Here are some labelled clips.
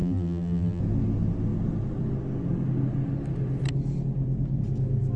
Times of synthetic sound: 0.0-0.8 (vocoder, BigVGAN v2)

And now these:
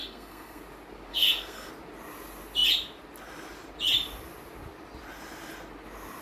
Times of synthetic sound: 0.0-0.6 (codec, SNAC); 1.1-1.7

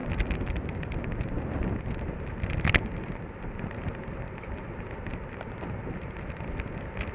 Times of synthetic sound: none